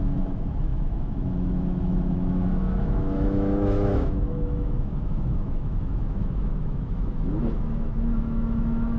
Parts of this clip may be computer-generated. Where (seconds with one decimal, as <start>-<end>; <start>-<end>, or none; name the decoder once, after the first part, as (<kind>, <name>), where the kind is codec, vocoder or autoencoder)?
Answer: 0.0-9.0 (autoencoder, DAC-VAE)